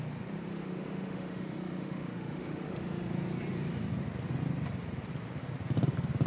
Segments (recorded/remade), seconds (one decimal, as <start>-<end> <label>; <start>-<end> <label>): 0.0-0.5 recorded; 0.5-3.1 remade; 3.1-6.3 recorded

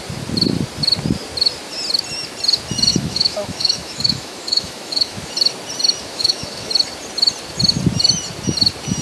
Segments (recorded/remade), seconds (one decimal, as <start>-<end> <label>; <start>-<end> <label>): 0.0-2.9 recorded; 2.9-5.3 remade; 5.3-6.0 recorded; 6.0-6.7 remade; 6.7-9.0 recorded

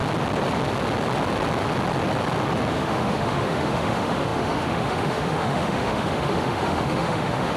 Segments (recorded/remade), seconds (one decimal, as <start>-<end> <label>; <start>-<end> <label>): 0.0-2.7 recorded; 2.7-7.6 remade

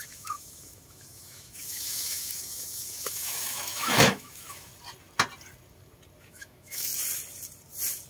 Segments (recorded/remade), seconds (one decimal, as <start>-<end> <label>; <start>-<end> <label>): 0.0-4.7 remade; 4.7-6.2 recorded; 6.2-6.9 remade; 6.9-8.1 recorded

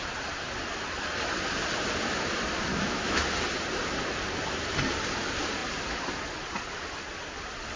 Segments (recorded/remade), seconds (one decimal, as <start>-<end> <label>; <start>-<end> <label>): 0.0-2.7 recorded; 2.7-3.2 remade; 3.2-7.8 recorded

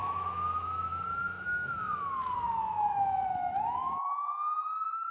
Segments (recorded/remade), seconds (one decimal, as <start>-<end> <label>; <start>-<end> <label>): 0.0-5.1 remade